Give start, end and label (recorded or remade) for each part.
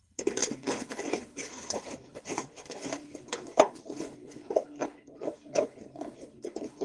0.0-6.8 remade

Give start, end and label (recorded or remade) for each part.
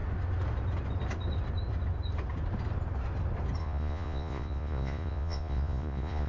0.0-3.6 recorded; 3.6-6.3 remade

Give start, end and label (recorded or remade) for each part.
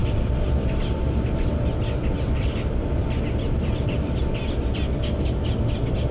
0.0-6.1 recorded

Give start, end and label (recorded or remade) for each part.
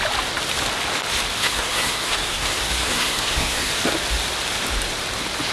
0.0-1.4 recorded; 1.4-3.8 remade; 3.8-5.5 recorded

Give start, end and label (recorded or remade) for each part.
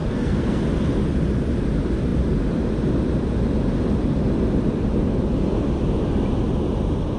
0.0-0.6 remade; 0.6-7.2 recorded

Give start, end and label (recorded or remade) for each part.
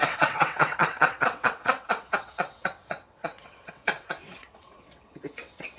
0.0-5.8 remade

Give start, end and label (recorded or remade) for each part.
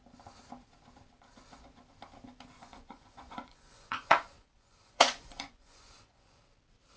0.0-2.6 recorded; 2.6-6.4 remade; 6.4-7.0 recorded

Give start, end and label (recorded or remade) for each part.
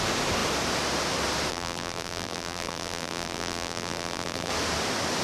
0.0-1.5 recorded; 1.5-4.5 remade; 4.5-5.2 recorded